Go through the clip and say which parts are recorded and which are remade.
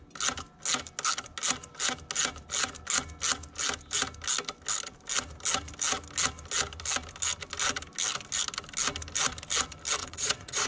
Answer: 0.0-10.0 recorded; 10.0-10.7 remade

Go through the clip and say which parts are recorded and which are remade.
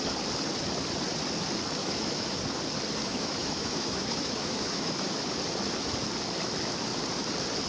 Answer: 0.0-1.8 recorded; 1.8-2.4 remade; 2.4-3.0 recorded; 3.0-5.4 remade; 5.4-7.7 recorded